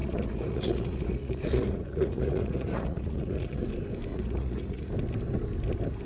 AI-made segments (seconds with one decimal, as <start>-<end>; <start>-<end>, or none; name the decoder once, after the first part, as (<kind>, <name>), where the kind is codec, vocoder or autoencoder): 0.0-3.6 (vocoder, Vocos); 4.1-4.9